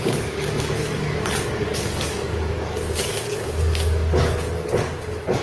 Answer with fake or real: fake